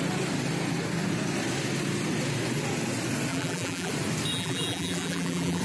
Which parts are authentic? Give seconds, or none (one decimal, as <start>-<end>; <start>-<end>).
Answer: 0.0-3.3; 3.9-4.3